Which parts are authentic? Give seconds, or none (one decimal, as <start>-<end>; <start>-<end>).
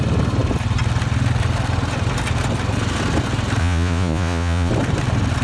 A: 0.0-3.6; 4.7-5.4